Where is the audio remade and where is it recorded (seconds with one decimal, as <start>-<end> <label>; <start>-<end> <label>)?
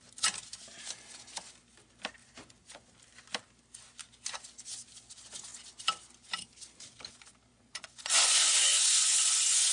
0.0-2.2 recorded; 2.2-2.9 remade; 2.9-7.5 recorded; 7.5-9.7 remade